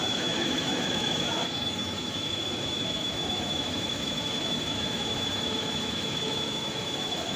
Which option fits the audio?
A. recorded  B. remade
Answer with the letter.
B